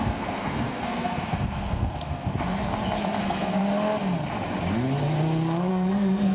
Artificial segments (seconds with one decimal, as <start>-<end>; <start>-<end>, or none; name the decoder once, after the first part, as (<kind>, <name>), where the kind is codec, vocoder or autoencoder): 0.0-2.3 (codec, SNAC); 3.2-3.6; 5.7-6.3